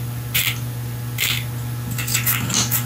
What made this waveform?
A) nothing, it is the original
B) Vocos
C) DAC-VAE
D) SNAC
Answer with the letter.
A